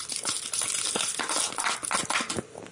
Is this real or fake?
real